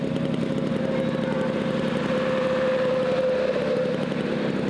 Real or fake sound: real